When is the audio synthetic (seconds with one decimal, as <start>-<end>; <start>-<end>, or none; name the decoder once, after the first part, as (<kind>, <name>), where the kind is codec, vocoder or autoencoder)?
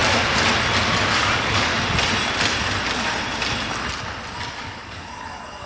1.1-1.7 (codec, DAC); 4.5-5.7